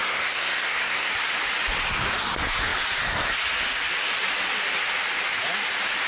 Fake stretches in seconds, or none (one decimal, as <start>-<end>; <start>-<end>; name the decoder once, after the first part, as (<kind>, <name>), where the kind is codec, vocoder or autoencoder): 0.0-1.1 (codec, SNAC)